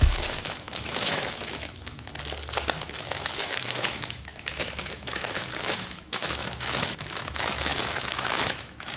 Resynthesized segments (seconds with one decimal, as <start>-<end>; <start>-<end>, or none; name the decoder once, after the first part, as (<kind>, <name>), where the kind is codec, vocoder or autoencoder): 0.0-2.1 (autoencoder, DAC-VAE); 2.8-9.0